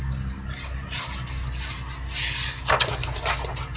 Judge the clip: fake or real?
real